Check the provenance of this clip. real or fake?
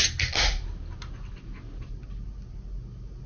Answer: real